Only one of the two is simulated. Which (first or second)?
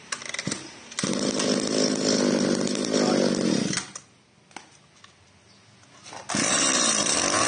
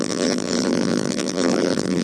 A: second